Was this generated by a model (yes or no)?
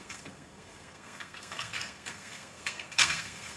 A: yes